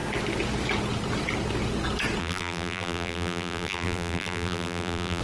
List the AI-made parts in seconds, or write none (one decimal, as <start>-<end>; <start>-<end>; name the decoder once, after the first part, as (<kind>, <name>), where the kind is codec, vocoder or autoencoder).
2.2-5.2 (vocoder, BigVGAN v2)